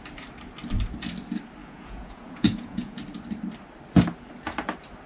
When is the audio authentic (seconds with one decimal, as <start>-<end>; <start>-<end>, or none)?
0.0-1.6; 3.0-5.1